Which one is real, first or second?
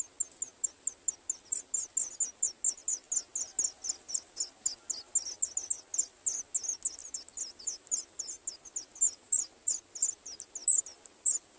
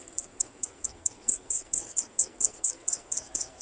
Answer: first